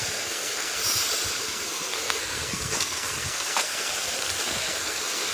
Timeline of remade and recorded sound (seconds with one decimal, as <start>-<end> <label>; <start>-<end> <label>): 0.0-0.8 remade; 0.8-1.4 recorded; 1.4-5.3 remade